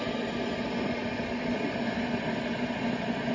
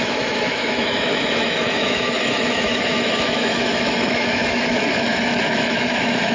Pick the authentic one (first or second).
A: first